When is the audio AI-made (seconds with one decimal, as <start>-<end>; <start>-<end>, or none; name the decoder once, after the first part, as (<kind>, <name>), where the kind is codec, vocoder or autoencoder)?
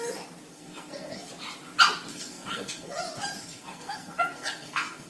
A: 0.5-1.3 (codec, SNAC); 2.1-3.0; 3.4-5.1